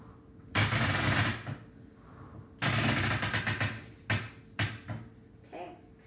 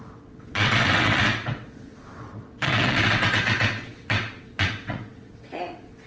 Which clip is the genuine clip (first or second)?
first